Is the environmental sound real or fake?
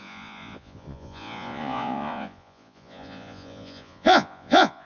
fake